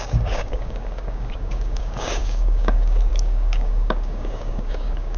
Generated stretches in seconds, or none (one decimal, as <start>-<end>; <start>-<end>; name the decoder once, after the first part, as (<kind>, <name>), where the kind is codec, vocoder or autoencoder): 0.0-5.2 (codec, DAC)